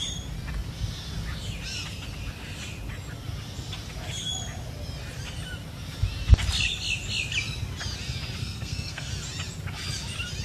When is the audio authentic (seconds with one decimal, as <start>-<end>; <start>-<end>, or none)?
0.0-8.4; 9.1-10.4